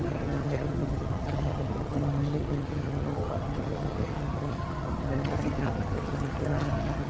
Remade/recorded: remade